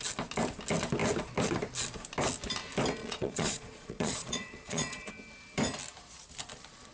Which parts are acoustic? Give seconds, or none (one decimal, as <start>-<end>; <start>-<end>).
0.0-3.0; 5.1-6.9